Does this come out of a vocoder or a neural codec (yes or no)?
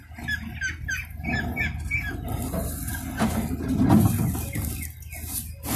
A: no